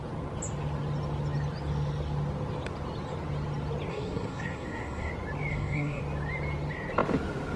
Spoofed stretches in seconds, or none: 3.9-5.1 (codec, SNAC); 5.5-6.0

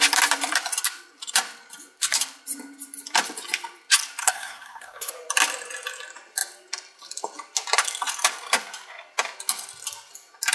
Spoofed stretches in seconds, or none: 4.2-5.1 (codec, SNAC)

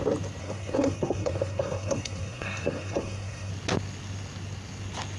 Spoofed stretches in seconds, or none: 0.4-3.5 (codec, SNAC)